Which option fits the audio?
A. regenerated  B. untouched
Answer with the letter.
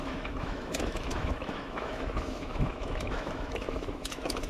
A